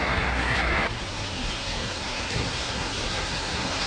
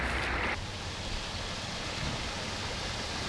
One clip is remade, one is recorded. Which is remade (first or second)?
first